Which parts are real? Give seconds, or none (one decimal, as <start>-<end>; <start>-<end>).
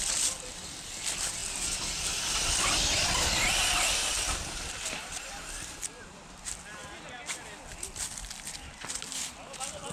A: 0.0-9.9